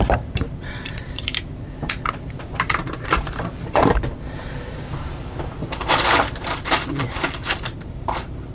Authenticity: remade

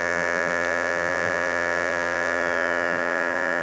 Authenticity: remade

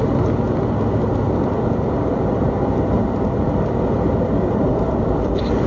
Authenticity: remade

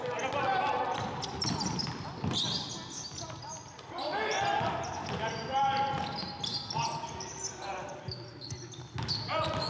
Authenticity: recorded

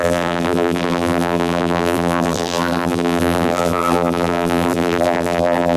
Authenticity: remade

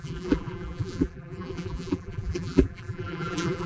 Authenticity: remade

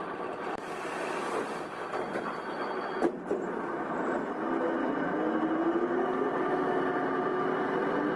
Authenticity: recorded